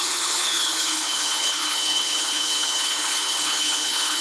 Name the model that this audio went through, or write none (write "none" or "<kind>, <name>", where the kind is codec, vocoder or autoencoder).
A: codec, HILCodec